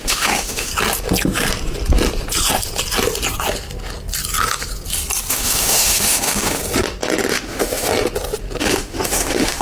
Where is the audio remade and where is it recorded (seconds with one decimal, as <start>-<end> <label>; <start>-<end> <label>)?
0.0-0.7 remade; 0.7-5.3 recorded; 5.3-6.6 remade; 6.6-7.3 recorded; 7.3-7.9 remade; 7.9-8.6 recorded; 8.6-9.6 remade